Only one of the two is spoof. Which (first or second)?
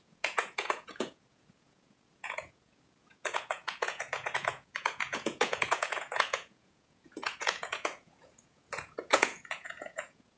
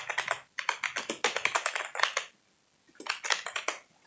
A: first